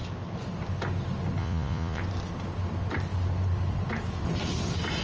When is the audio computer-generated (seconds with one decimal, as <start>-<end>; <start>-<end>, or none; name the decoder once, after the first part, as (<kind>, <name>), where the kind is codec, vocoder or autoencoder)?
1.4-2.0 (vocoder, Vocos)